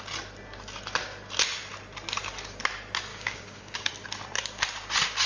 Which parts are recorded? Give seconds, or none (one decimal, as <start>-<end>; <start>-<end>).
0.0-3.1; 3.9-5.3